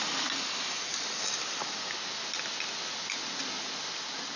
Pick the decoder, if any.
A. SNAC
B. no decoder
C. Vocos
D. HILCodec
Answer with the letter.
B